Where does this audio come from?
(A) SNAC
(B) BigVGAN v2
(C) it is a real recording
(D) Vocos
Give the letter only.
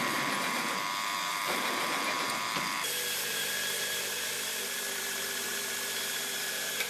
B